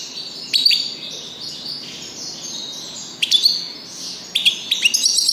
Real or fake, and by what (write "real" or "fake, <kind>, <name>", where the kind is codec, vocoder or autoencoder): real